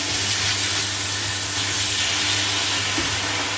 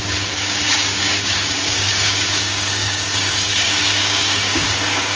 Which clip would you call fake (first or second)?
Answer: second